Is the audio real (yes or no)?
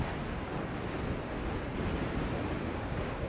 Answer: yes